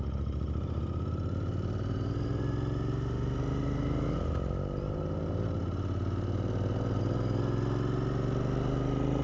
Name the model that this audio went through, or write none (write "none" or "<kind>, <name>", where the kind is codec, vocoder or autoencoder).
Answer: none